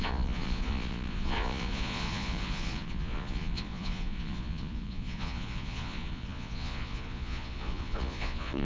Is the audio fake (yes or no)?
yes